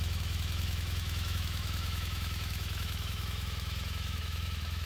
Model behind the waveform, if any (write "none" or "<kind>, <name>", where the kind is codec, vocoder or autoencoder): autoencoder, DAC-VAE